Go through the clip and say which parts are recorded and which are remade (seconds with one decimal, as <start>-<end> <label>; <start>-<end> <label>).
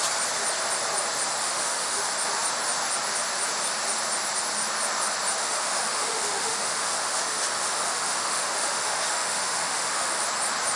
0.0-1.4 recorded; 1.4-2.0 remade; 2.0-5.4 recorded; 5.4-10.2 remade; 10.2-10.8 recorded